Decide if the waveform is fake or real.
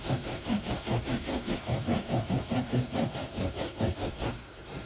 fake